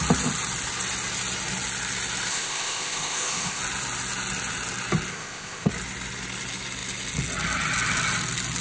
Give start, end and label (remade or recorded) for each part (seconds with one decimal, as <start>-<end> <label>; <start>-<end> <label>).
0.0-2.3 recorded; 2.3-3.6 remade; 3.6-5.1 recorded; 5.1-5.7 remade; 5.7-8.6 recorded